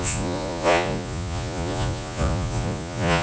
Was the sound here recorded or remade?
remade